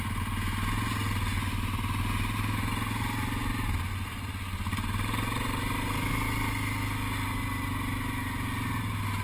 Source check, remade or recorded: recorded